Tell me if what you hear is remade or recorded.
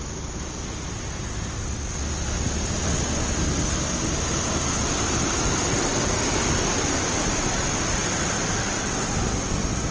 recorded